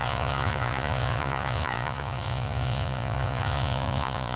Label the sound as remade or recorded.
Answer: remade